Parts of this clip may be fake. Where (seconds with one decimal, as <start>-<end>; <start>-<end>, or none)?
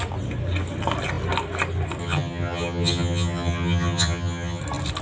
2.0-4.6